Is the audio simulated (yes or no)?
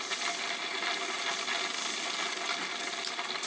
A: no